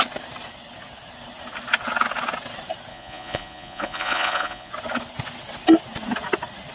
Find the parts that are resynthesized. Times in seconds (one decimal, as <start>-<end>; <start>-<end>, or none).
2.9-4.7